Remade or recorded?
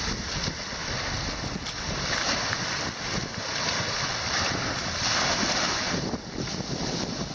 recorded